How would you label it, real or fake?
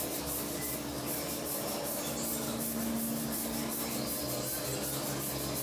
real